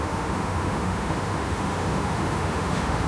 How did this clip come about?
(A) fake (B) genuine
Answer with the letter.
A